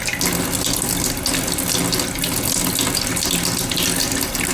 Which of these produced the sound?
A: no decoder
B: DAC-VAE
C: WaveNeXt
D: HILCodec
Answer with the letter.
A